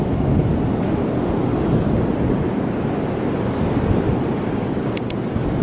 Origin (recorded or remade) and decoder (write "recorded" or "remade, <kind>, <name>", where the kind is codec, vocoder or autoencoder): recorded